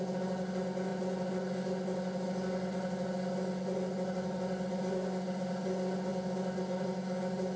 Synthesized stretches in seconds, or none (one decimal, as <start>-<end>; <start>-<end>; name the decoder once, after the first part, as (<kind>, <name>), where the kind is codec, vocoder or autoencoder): none